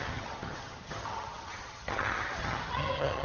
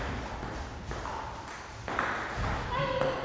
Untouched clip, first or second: second